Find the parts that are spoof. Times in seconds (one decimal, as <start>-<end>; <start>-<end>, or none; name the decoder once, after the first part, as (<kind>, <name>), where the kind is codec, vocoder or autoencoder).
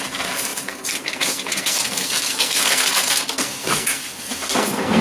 0.0-5.0 (codec, SNAC)